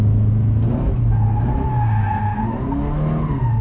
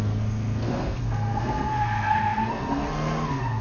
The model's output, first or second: second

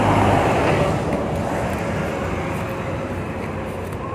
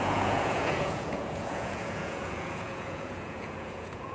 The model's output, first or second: second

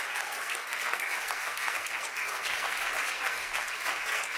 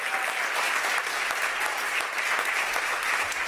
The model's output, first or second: first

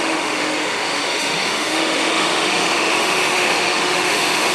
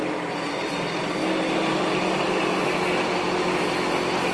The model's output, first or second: first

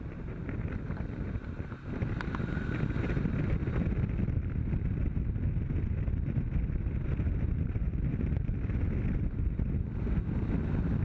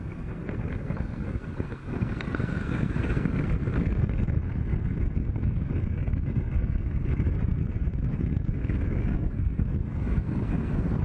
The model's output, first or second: second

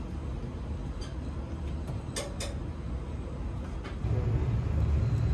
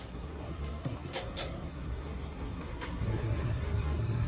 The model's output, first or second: second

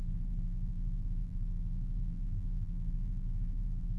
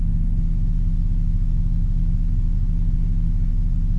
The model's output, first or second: first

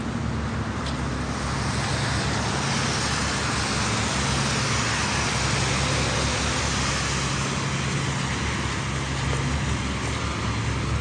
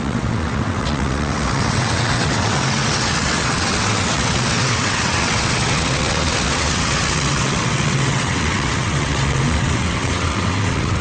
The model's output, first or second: second